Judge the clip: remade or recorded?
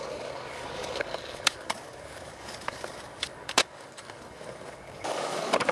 remade